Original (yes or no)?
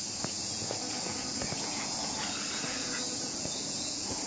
no